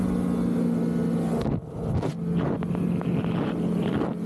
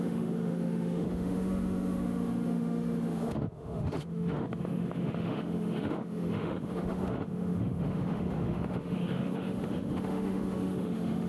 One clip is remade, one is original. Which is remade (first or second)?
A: second